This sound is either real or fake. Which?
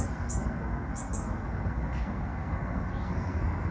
fake